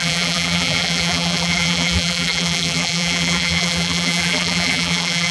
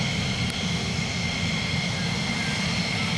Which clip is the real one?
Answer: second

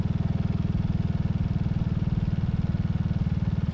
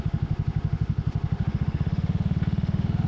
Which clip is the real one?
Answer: first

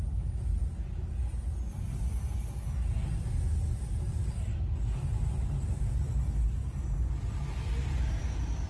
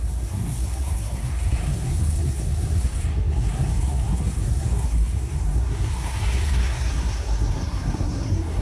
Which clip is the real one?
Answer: first